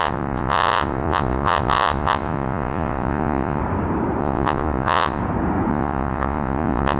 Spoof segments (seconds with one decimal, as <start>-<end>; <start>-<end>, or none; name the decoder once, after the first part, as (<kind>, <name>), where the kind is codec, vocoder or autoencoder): 0.0-3.6 (vocoder, Vocos); 4.2-5.2; 5.7-7.0